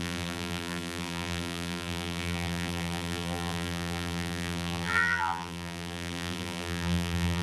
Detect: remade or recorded remade